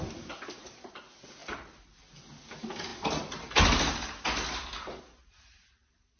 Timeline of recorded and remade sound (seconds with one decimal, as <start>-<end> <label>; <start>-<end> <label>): 0.0-6.2 recorded